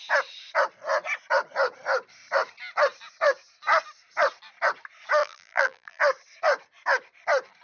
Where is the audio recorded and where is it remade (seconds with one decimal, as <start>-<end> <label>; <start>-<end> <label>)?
0.0-5.2 recorded; 5.2-6.0 remade; 6.0-7.6 recorded